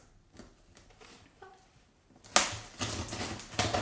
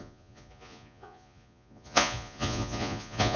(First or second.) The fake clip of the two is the second